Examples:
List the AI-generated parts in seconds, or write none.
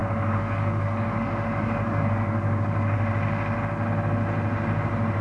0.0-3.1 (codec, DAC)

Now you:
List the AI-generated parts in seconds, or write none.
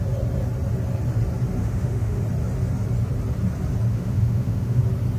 1.6-2.2 (autoencoder, DAC-VAE); 3.9-4.8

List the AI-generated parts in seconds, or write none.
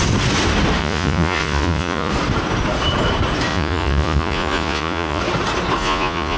0.8-2.1 (vocoder, Vocos); 3.5-5.2; 5.8-6.4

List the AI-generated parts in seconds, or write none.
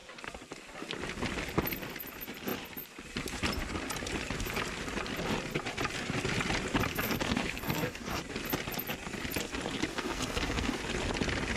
6.9-8.2 (codec, SNAC); 9.9-10.8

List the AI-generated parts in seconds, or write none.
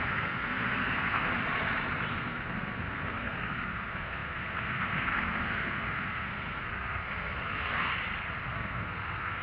0.0-1.3 (codec, SNAC); 2.1-7.9; 8.5-9.4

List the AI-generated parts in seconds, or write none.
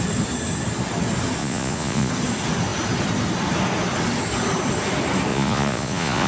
1.4-2.1 (vocoder, Vocos); 5.3-6.3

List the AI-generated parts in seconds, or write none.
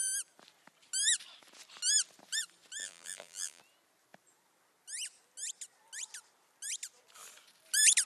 2.8-3.6 (vocoder, BigVGAN v2)